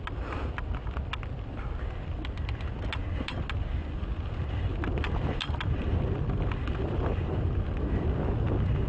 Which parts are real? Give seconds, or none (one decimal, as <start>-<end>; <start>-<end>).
0.0-8.9